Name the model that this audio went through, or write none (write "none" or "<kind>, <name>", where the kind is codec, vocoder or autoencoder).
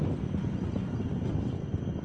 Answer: none